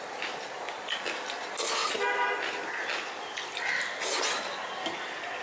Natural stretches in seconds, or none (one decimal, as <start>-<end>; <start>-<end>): 0.0-5.4